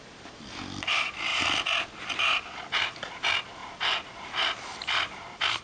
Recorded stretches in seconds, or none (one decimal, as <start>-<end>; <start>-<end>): 0.0-3.6; 4.2-5.6